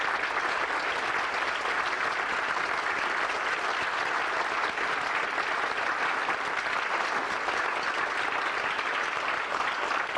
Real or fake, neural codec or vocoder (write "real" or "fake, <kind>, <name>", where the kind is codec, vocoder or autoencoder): real